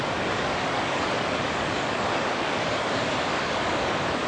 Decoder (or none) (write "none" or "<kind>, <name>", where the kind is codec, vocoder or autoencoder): codec, DAC